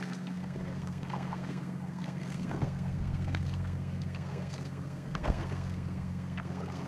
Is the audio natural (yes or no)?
no